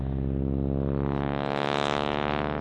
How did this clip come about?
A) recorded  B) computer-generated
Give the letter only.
A